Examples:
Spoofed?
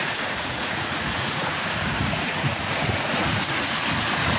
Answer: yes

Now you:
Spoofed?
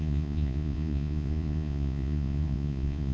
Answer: yes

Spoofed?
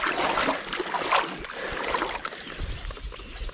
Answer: no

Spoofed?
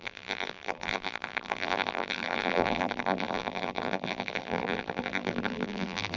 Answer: yes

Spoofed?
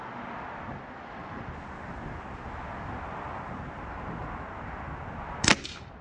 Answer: no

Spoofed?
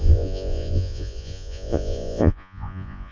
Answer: yes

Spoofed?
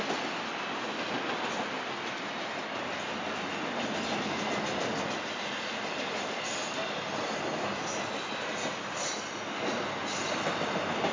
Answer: no